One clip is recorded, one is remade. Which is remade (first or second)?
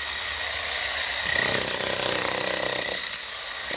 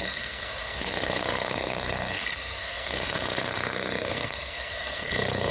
second